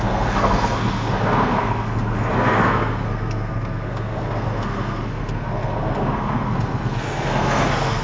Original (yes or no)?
no